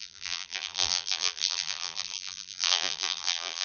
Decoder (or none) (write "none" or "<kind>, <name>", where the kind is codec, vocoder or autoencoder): vocoder, BigVGAN v2